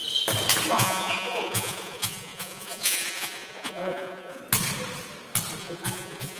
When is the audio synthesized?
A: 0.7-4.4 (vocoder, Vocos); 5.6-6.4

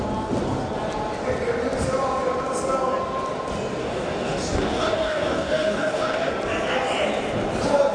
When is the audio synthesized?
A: 3.8-6.3 (codec, DAC)